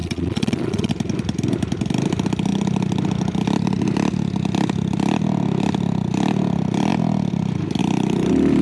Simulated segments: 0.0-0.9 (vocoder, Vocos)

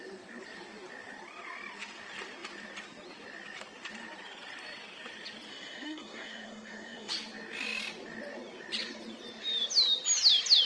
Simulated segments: 5.5-7.1 (codec, SNAC)

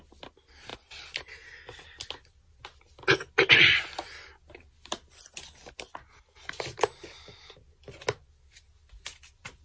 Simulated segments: none